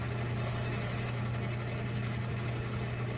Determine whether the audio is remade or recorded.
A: recorded